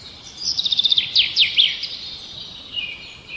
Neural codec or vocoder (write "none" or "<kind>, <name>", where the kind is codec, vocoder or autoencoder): none